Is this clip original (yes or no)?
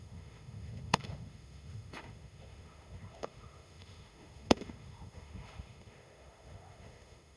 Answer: no